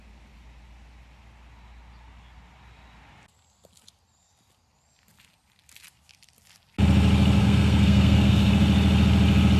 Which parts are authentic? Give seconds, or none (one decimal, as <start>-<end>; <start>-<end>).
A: 0.0-7.4; 8.5-9.6